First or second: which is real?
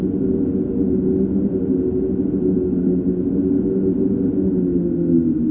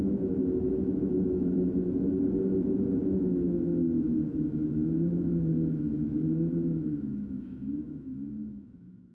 first